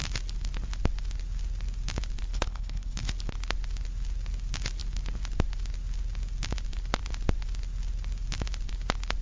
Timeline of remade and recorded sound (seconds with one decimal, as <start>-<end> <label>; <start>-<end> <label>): 0.0-2.3 recorded; 2.3-3.1 remade; 3.1-9.2 recorded

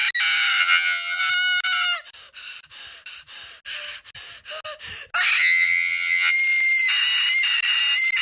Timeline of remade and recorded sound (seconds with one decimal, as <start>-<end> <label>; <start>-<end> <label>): 0.0-0.6 recorded; 0.6-1.2 remade; 1.2-5.4 recorded; 5.4-6.3 remade; 6.3-8.2 recorded

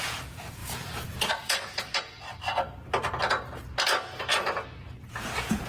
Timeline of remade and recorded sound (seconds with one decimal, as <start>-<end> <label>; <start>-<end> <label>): 0.0-2.1 remade; 2.1-5.0 recorded; 5.0-5.7 remade

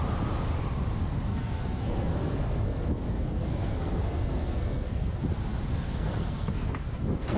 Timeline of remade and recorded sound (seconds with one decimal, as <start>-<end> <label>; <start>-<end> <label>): 0.0-1.3 recorded; 1.3-5.2 remade; 5.2-5.7 recorded; 5.7-7.4 remade

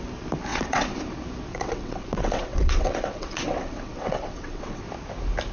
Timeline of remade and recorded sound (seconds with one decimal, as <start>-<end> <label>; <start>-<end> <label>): 0.0-0.5 recorded; 0.5-1.0 remade; 1.0-1.5 recorded; 1.5-4.8 remade; 4.8-5.5 recorded